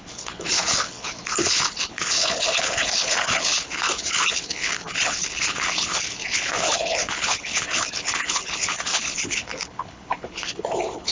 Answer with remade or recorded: remade